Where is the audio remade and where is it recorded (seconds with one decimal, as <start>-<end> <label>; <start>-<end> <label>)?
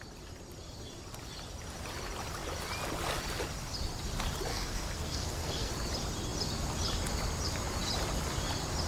0.0-4.5 recorded; 4.5-5.7 remade; 5.7-8.9 recorded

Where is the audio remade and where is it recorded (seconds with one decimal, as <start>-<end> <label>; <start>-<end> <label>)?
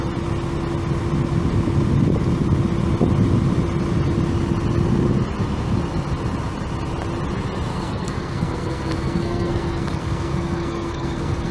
0.0-7.7 recorded; 7.7-11.5 remade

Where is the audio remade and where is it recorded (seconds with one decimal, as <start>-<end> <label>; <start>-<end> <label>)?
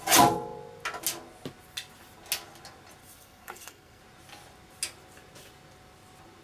0.0-3.0 recorded; 3.0-4.0 remade; 4.0-6.4 recorded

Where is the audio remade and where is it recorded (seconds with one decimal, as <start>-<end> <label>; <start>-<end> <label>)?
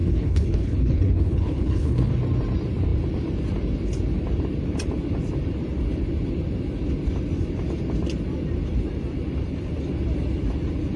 0.0-2.1 remade; 2.1-11.0 recorded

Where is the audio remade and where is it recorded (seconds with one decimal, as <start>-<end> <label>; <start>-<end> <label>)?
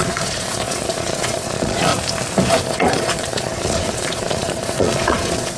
0.0-1.9 remade; 1.9-2.7 recorded; 2.7-5.6 remade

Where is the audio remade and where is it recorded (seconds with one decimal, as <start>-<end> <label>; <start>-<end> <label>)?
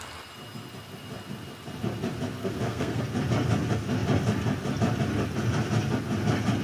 0.0-2.4 recorded; 2.4-3.0 remade; 3.0-6.6 recorded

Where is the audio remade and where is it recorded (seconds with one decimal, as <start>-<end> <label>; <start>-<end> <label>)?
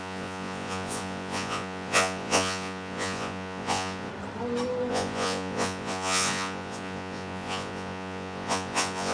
0.0-4.1 remade; 4.1-4.9 recorded; 4.9-9.1 remade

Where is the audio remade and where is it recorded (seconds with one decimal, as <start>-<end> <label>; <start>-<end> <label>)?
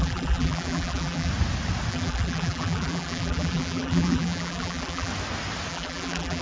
0.0-1.3 remade; 1.3-1.9 recorded; 1.9-5.1 remade; 5.1-5.7 recorded; 5.7-6.4 remade